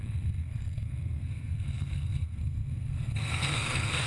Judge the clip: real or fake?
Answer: fake